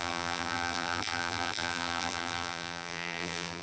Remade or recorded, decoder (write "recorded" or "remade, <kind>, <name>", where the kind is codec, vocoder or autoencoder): remade, vocoder, BigVGAN v2